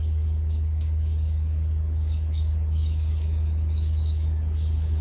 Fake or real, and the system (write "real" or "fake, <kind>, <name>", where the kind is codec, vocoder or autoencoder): fake, codec, DAC